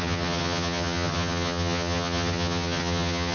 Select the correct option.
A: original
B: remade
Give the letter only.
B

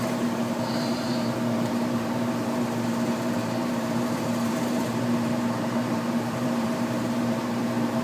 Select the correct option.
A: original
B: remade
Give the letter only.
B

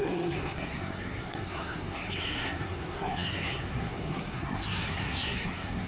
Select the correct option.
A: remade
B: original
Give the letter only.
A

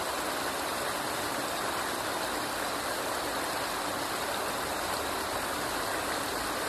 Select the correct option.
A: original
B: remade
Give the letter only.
A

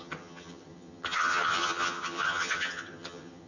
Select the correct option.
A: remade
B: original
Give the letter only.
A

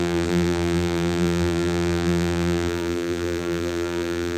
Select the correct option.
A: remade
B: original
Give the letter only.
A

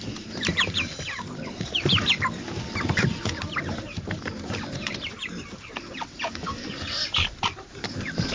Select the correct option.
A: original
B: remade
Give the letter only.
B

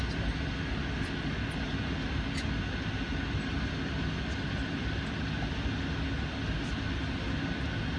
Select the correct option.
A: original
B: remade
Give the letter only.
A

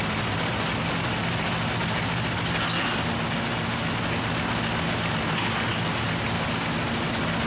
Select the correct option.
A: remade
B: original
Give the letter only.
B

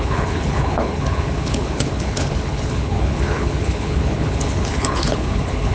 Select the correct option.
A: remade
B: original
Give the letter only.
A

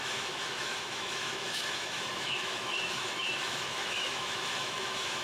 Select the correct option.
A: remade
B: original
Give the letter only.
A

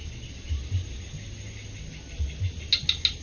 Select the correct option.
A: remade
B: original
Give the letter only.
B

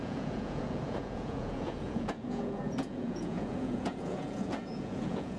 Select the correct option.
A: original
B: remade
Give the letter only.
B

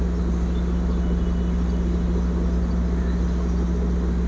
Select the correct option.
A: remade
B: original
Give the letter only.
B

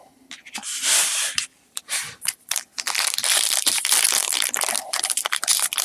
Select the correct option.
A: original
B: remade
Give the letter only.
B